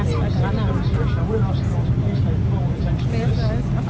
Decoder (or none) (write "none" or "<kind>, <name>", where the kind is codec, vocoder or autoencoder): none